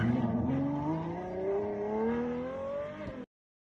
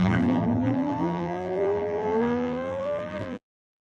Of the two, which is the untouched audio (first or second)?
first